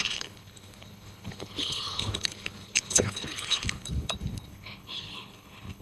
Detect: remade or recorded remade